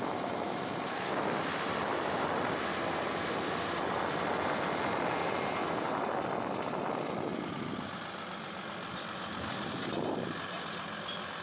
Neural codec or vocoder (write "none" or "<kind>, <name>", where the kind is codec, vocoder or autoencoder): none